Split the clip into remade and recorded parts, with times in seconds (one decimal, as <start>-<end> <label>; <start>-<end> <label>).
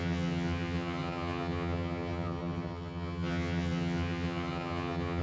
0.0-5.2 remade